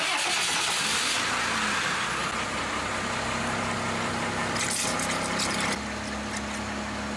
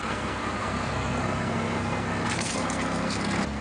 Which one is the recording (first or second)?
first